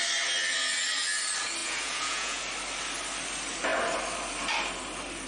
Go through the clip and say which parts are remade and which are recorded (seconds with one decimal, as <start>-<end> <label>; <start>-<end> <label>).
0.0-1.6 recorded; 1.6-2.4 remade; 2.4-5.3 recorded